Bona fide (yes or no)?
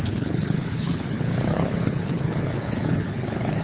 no